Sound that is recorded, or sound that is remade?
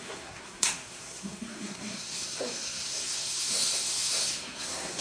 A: remade